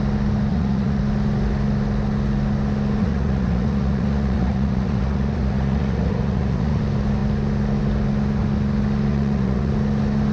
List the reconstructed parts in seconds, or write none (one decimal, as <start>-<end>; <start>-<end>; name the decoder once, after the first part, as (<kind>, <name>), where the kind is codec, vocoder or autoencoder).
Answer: 0.5-1.0 (vocoder, Vocos); 3.0-6.8; 9.1-9.7